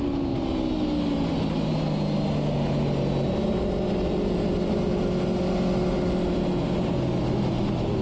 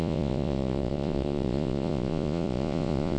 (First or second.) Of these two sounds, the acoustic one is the first